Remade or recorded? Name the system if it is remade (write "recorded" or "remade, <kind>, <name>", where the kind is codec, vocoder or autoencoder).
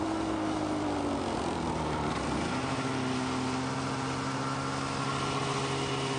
recorded